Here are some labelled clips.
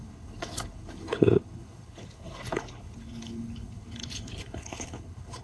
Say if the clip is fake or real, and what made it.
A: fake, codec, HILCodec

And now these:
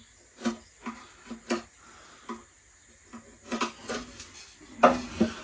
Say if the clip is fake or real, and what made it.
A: real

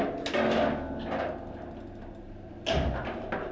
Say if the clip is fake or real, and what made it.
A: real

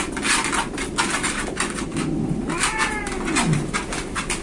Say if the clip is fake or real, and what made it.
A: real